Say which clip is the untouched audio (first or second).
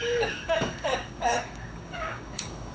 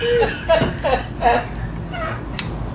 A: second